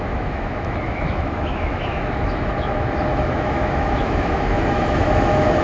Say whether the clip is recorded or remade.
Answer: remade